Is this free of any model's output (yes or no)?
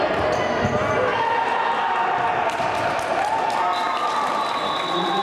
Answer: yes